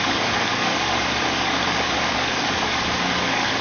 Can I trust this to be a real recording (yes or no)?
no